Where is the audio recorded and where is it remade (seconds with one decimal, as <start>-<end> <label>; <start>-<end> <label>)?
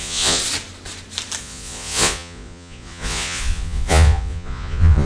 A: 0.0-0.4 remade; 0.4-1.4 recorded; 1.4-5.1 remade